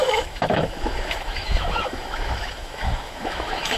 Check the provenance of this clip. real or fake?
fake